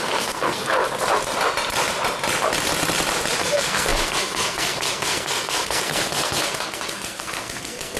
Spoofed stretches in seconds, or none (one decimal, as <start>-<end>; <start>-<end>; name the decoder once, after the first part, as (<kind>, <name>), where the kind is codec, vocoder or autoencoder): 0.0-0.8 (codec, SNAC); 3.4-8.0